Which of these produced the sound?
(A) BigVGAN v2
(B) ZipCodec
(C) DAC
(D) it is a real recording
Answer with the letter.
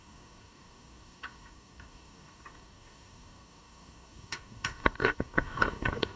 C